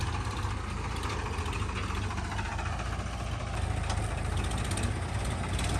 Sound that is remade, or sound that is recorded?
recorded